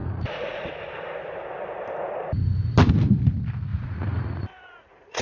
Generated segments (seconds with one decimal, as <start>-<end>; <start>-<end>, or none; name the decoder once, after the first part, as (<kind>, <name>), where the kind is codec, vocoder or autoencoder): 0.0-0.7 (vocoder, Vocos); 3.7-5.2